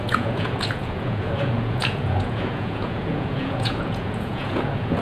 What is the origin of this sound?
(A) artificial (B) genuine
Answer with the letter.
A